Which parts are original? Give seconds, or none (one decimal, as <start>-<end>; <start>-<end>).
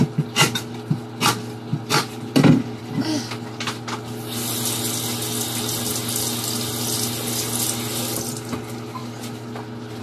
0.0-10.0